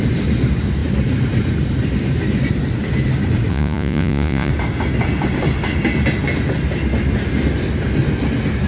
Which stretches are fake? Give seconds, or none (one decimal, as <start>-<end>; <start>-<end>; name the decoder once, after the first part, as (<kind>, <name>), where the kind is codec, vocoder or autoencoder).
3.5-4.5 (vocoder, Vocos)